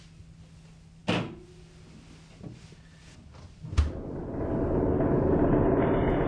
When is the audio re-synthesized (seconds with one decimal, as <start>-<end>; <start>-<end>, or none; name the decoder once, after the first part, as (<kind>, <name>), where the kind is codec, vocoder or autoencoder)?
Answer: none

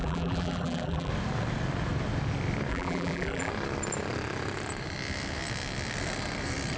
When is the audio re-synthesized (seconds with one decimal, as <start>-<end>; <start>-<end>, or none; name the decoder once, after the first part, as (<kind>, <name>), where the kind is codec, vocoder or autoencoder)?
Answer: 0.0-1.1 (vocoder, BigVGAN v2); 2.7-3.5

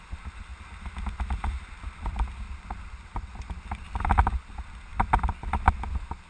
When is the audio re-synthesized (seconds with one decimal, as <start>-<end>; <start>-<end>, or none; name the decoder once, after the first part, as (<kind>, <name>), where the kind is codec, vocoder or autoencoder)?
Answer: none